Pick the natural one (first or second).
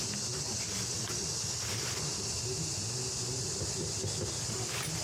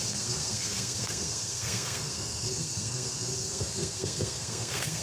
first